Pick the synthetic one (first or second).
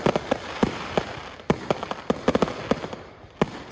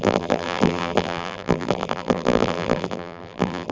second